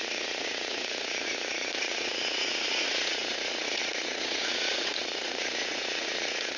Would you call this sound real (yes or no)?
no